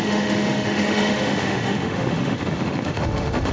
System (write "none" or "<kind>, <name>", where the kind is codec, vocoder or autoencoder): autoencoder, DAC-VAE